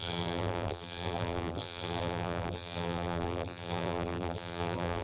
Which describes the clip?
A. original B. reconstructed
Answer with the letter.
B